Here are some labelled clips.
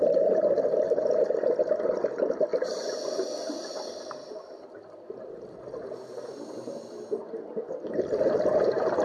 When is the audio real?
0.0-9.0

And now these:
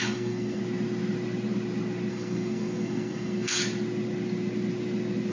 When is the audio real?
0.6-2.1; 3.6-5.3

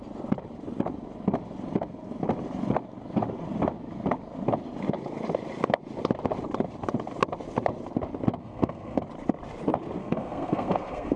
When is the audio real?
0.0-8.4; 9.0-10.0

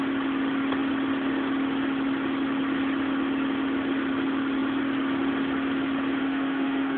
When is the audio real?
0.0-6.2

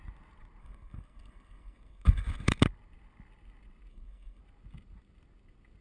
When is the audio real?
0.0-0.6; 2.6-3.9; 4.4-5.8

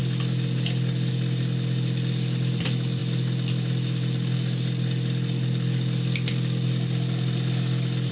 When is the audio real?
0.0-8.1

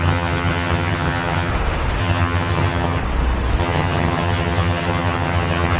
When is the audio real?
1.5-2.0; 3.0-3.6

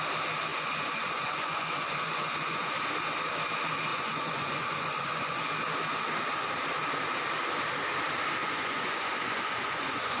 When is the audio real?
0.0-0.5; 2.7-3.9; 5.4-8.4